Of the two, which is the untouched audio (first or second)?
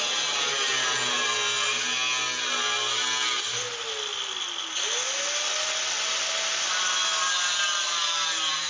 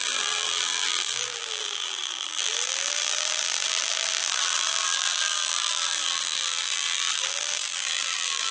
first